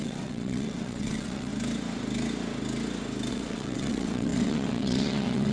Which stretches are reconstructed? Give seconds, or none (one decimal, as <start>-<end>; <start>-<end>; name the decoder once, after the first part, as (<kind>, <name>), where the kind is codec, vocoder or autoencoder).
0.0-1.5 (vocoder, WaveNeXt); 3.3-5.5